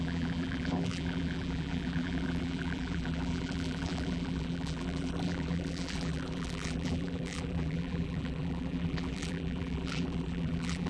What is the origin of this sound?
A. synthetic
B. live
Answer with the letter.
A